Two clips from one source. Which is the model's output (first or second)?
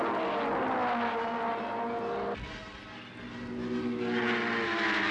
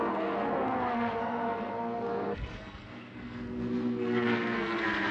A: second